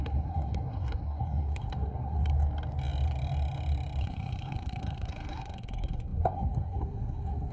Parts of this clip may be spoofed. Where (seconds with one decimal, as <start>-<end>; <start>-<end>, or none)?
0.0-2.3; 4.0-7.5